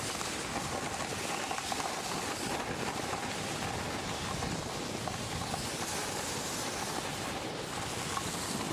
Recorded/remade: recorded